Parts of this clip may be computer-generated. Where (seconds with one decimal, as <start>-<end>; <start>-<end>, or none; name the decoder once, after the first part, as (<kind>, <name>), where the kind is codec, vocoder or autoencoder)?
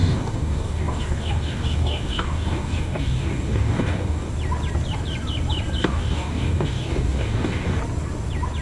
0.0-4.3 (codec, DAC); 5.8-7.8